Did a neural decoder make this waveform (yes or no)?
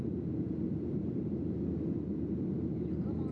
no